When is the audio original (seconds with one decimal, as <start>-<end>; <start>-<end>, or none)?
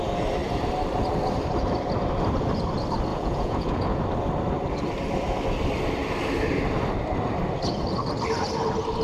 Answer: 0.0-3.1; 4.0-9.0